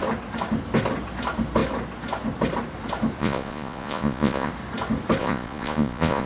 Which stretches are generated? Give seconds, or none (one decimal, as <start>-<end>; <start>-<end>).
3.2-4.5; 5.2-6.3